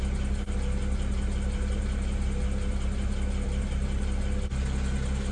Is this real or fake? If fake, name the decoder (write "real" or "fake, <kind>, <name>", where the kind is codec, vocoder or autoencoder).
real